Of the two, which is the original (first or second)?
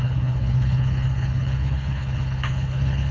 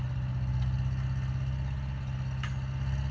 second